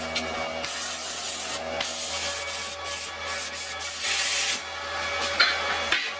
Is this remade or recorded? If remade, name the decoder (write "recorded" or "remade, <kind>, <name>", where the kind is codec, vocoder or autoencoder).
recorded